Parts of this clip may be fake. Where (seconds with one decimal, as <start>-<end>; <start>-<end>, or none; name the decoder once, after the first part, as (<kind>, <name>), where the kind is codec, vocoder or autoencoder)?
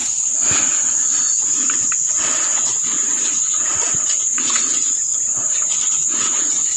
2.5-6.8 (vocoder, Vocos)